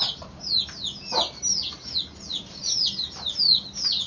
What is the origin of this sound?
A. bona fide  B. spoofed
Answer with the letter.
A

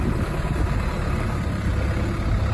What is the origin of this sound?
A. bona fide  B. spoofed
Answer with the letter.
A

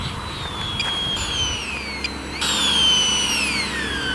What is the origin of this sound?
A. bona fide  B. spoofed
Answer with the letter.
A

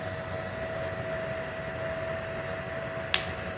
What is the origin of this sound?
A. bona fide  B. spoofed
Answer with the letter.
A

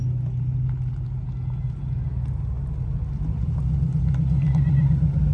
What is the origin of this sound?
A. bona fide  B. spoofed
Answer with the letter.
A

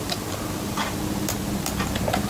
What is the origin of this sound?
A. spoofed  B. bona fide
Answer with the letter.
B